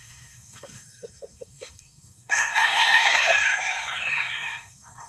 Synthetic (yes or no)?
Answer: yes